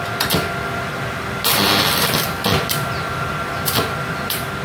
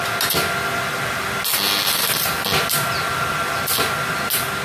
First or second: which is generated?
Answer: first